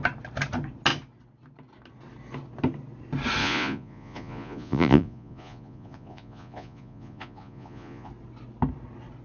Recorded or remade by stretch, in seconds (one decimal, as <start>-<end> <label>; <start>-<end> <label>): 0.0-3.4 recorded; 3.4-8.1 remade; 8.1-9.2 recorded